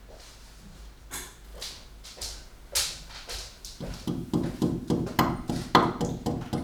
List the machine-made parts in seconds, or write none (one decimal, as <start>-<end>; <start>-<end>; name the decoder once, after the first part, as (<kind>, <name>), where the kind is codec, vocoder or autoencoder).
none